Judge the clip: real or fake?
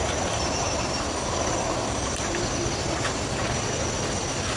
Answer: real